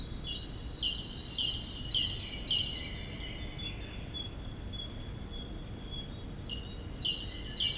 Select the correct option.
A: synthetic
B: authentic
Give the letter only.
B